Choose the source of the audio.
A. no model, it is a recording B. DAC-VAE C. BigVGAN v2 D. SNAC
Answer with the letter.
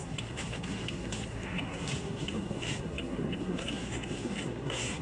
D